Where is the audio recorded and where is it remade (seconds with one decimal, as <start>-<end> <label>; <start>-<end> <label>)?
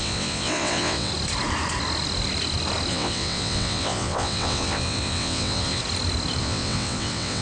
0.0-1.1 remade; 1.1-2.9 recorded; 2.9-5.8 remade; 5.8-6.4 recorded; 6.4-7.4 remade